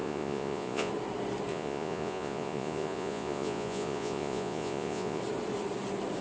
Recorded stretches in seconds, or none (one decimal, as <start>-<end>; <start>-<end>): 0.9-1.5; 5.2-6.2